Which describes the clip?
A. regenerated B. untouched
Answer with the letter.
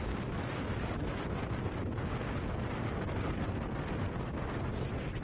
B